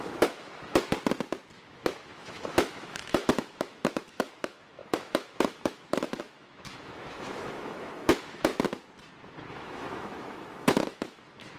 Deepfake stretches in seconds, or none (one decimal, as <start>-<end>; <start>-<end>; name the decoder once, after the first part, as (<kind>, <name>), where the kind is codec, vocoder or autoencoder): 0.0-0.9 (autoencoder, DAC-VAE); 1.6-8.5; 9.5-11.6